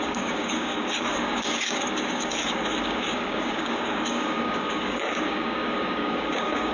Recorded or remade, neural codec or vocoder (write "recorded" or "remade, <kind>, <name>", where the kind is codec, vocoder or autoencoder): remade, codec, DAC